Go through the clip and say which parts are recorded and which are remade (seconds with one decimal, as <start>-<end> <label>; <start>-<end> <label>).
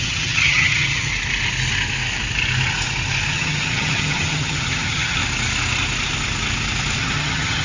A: 0.0-1.1 remade; 1.1-3.3 recorded; 3.3-5.2 remade; 5.2-7.0 recorded; 7.0-7.6 remade